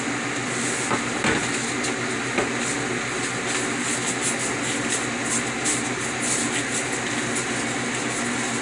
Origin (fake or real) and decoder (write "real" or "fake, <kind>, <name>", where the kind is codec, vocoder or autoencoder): real